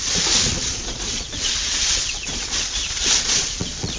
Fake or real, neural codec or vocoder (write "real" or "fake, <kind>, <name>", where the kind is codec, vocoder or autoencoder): fake, vocoder, Vocos